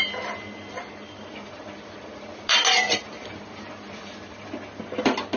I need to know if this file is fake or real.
real